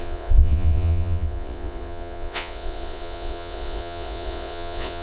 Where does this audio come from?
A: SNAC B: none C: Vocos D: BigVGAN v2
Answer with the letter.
C